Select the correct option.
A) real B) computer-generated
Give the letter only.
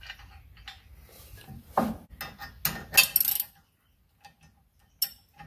A